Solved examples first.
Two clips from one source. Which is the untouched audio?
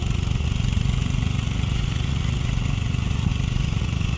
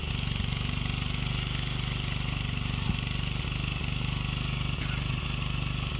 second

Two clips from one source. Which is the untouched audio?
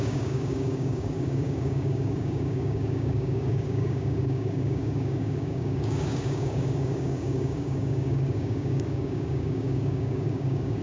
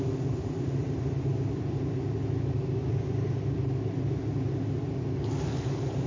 second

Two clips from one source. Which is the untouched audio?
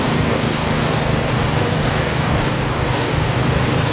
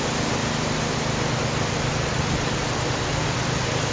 second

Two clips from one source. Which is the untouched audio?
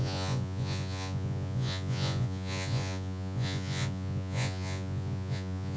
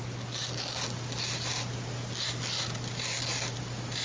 second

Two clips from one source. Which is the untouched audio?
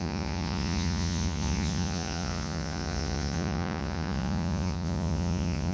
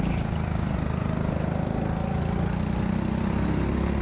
second